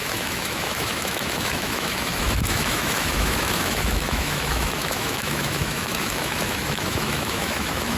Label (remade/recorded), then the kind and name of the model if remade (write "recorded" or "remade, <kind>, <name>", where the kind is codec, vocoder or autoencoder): remade, autoencoder, DAC-VAE